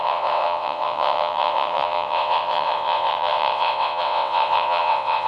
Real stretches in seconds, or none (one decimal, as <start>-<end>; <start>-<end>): none